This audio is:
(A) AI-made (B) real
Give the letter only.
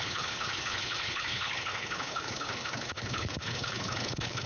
A